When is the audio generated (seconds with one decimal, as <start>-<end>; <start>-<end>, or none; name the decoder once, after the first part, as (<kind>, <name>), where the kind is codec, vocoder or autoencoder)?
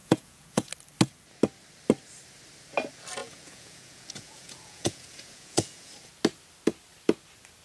0.0-0.7 (vocoder, Vocos); 3.2-5.9